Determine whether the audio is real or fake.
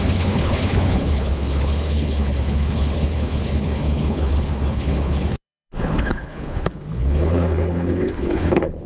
fake